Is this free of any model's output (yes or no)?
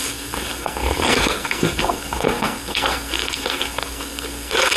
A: no